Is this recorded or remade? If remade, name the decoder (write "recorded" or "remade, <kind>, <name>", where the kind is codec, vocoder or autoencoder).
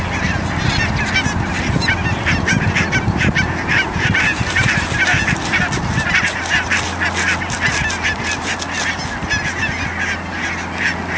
recorded